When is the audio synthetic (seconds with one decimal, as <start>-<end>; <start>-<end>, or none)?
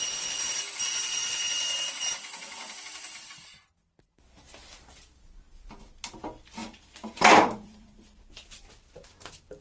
6.6-8.3